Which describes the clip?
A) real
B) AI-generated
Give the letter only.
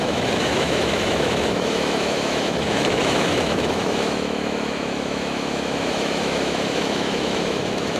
B